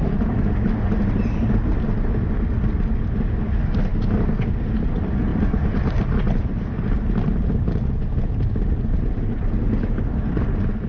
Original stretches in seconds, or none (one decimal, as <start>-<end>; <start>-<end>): 0.0-5.3; 7.8-8.9; 10.0-10.9

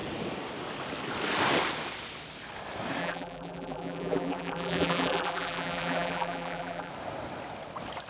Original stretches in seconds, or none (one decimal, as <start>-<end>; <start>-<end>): 0.0-3.0; 6.9-8.1

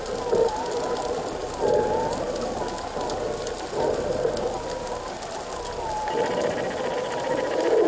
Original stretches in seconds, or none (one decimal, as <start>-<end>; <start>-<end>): 0.0-7.9

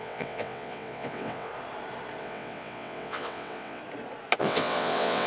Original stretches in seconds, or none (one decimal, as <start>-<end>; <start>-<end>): 1.5-2.2; 3.8-4.4